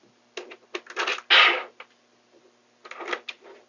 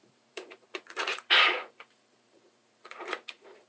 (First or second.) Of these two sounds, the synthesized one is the second